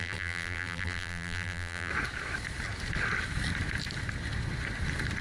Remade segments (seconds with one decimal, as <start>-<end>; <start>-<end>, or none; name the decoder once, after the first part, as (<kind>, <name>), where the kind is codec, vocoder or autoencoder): 0.0-1.9 (vocoder, BigVGAN v2)